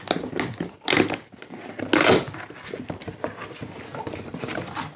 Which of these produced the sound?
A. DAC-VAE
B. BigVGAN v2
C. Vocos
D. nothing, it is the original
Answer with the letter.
D